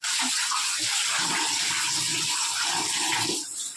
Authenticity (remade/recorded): recorded